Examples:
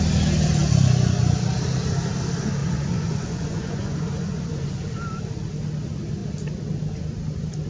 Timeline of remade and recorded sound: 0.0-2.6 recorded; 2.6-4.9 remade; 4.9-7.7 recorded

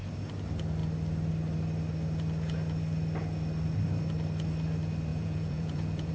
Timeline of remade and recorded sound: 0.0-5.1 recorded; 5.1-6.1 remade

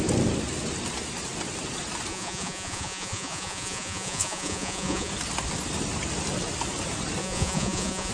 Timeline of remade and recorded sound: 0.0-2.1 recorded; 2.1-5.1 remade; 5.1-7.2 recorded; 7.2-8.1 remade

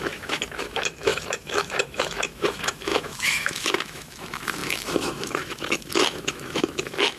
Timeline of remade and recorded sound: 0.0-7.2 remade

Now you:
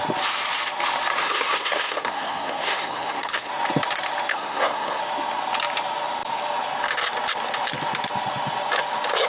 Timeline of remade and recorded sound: 0.0-1.2 recorded; 1.2-3.5 remade; 3.5-4.3 recorded; 4.3-5.0 remade; 5.0-9.3 recorded

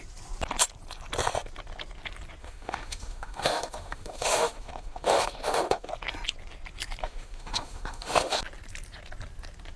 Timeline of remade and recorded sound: 0.0-2.4 recorded; 2.4-5.9 remade; 5.9-7.0 recorded; 7.0-8.4 remade; 8.4-9.8 recorded

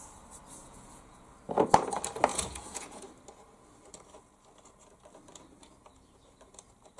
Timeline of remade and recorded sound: 0.0-0.6 recorded; 0.6-1.2 remade; 1.2-2.3 recorded; 2.3-3.1 remade; 3.1-7.0 recorded

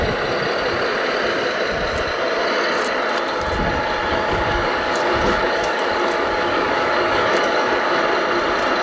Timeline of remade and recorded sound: 0.0-4.1 recorded; 4.1-8.0 remade; 8.0-8.8 recorded